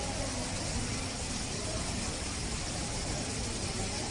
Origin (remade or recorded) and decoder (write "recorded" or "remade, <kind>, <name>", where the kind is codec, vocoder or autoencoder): recorded